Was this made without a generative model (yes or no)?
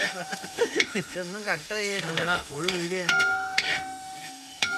no